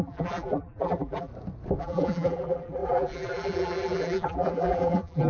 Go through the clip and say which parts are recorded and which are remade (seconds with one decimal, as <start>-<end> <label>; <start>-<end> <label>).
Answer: 0.0-1.3 remade; 1.3-1.8 recorded; 1.8-5.3 remade